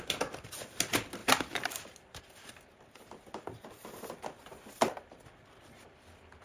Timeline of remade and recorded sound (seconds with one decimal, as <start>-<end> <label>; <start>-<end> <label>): 0.0-6.4 recorded